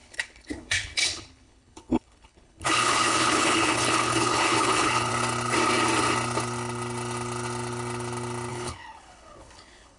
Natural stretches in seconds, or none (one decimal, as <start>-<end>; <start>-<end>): 5.1-8.5